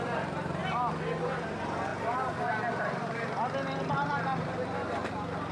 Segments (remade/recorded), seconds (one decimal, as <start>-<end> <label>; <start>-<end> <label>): 0.0-0.6 remade; 0.6-1.2 recorded; 1.2-5.5 remade